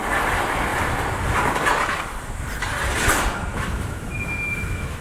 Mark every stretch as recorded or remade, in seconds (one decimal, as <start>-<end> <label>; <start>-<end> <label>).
0.0-3.5 recorded; 3.5-5.0 remade